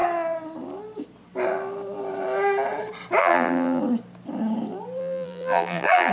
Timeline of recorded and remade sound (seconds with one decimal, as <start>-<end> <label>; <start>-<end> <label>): 0.0-3.2 recorded; 3.2-3.8 remade; 3.8-5.0 recorded; 5.0-6.1 remade